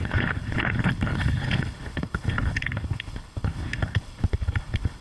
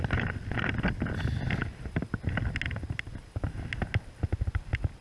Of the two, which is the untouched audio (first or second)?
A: second